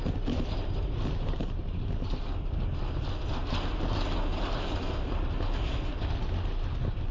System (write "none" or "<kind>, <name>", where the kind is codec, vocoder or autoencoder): none